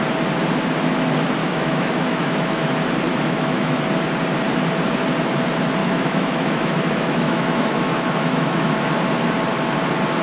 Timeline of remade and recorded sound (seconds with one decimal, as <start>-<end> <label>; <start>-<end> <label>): 0.0-1.4 recorded; 1.4-2.7 remade; 2.7-3.1 recorded; 3.1-3.8 remade; 3.8-5.8 recorded; 5.8-8.7 remade; 8.7-10.2 recorded